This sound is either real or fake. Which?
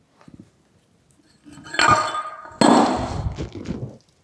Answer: real